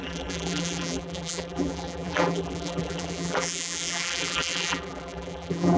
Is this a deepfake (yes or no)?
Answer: yes